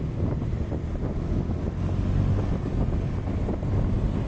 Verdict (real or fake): real